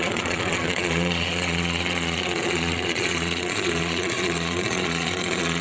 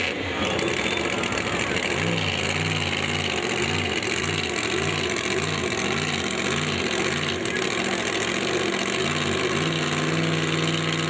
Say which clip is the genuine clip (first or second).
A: second